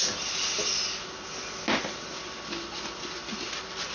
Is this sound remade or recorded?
recorded